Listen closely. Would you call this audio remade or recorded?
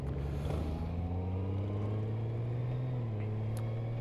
recorded